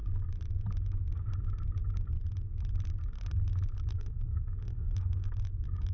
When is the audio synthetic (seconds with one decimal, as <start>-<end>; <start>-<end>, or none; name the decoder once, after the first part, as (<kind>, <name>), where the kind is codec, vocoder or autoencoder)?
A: 3.9-5.3 (codec, SNAC)